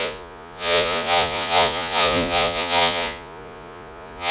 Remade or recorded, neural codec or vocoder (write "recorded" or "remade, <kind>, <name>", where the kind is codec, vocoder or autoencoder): remade, vocoder, Vocos